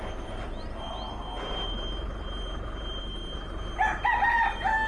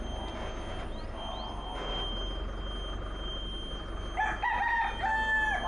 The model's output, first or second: first